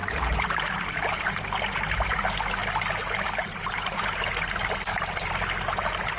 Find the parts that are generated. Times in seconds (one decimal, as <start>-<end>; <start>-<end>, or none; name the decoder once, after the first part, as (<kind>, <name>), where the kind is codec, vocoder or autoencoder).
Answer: 0.0-1.1 (vocoder, BigVGAN v2); 2.6-3.8